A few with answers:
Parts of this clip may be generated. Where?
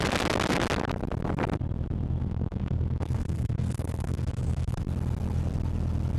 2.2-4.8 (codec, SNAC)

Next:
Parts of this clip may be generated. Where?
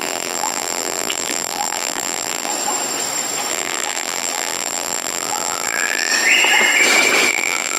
0.0-2.5 (vocoder, BigVGAN v2); 3.5-6.1; 7.3-7.8